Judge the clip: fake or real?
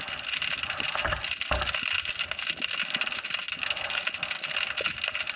real